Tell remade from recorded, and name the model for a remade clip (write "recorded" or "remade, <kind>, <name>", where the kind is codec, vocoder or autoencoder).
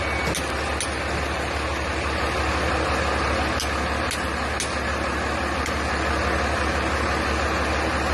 recorded